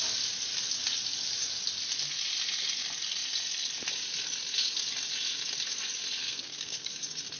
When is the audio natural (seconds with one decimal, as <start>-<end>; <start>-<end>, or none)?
0.0-6.2; 7.0-7.4